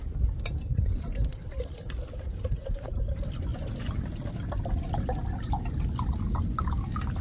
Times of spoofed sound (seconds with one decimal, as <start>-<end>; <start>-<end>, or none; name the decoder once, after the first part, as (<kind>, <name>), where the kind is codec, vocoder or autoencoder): none